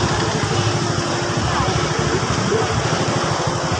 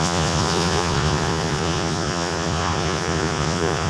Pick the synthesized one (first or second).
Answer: second